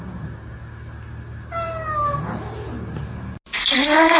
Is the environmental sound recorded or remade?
recorded